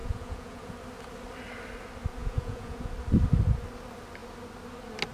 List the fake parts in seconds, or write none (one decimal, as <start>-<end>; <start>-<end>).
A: 0.0-0.7; 2.2-2.9